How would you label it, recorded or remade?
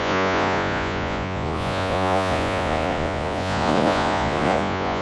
remade